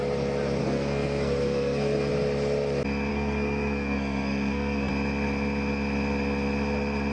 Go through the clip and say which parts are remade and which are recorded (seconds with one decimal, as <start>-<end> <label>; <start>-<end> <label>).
0.0-0.6 recorded; 0.6-2.1 remade; 2.1-3.1 recorded; 3.1-4.9 remade; 4.9-7.1 recorded